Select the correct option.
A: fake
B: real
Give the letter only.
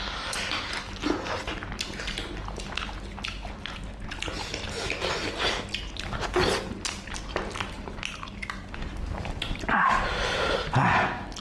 B